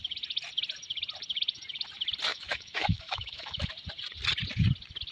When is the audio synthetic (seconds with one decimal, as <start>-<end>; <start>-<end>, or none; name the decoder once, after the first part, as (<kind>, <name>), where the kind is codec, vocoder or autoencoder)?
2.3-3.7 (autoencoder, DAC-VAE)